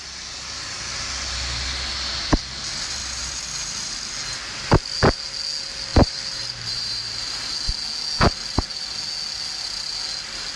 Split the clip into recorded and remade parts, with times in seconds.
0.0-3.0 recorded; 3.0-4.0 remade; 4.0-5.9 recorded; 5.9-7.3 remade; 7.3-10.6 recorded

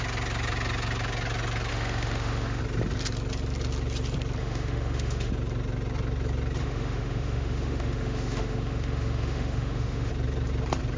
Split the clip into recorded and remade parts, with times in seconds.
0.0-1.7 recorded; 1.7-2.6 remade; 2.6-4.4 recorded; 4.4-5.3 remade; 5.3-6.6 recorded; 6.6-10.1 remade; 10.1-11.0 recorded

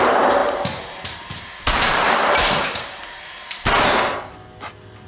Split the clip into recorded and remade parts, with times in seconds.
0.0-0.4 recorded; 0.4-3.2 remade; 3.2-5.1 recorded

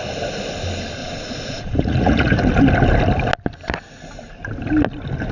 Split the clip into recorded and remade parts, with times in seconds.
0.0-1.0 recorded; 1.0-2.4 remade; 2.4-5.3 recorded

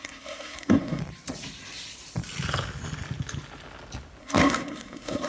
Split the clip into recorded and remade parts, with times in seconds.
0.0-1.0 remade; 1.0-4.2 recorded; 4.2-5.3 remade